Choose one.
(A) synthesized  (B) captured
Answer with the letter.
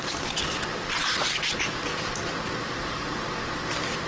B